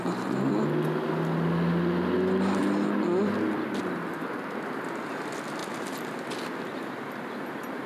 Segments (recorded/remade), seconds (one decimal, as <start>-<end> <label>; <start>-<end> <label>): 0.0-7.9 recorded